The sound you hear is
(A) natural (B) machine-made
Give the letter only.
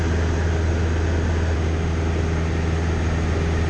A